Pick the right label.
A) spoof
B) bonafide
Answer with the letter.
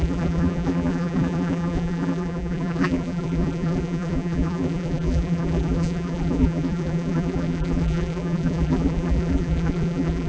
A